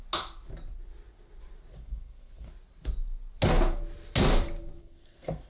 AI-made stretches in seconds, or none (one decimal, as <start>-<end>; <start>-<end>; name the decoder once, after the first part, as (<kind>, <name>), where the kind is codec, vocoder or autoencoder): 1.7-2.5 (codec, SNAC); 4.8-5.5

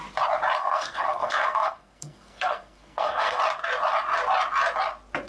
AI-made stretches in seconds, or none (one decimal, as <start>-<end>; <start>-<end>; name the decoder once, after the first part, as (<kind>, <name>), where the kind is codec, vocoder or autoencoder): 0.6-3.4 (codec, SNAC)

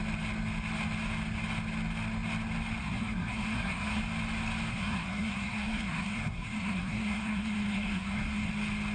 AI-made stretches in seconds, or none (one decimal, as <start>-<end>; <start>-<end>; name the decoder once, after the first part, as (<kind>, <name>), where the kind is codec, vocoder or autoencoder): 2.8-4.0 (codec, SNAC); 4.7-8.5

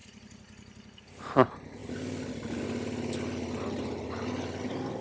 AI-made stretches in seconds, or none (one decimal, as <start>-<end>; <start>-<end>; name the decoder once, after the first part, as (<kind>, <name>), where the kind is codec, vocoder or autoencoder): none

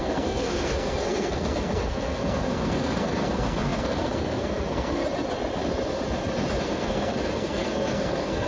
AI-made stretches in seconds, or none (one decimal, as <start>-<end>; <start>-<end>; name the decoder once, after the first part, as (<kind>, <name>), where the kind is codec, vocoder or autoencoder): 0.0-5.0 (codec, SNAC); 6.6-8.5

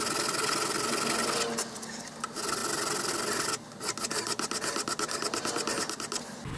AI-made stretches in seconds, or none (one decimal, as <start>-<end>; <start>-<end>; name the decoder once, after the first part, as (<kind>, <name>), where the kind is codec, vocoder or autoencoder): none